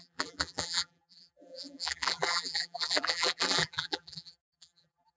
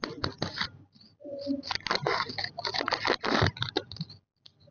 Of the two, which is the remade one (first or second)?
first